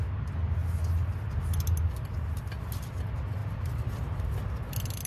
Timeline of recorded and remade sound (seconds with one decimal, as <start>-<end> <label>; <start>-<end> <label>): 0.0-3.4 recorded; 3.4-4.3 remade; 4.3-5.1 recorded